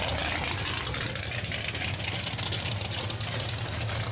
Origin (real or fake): real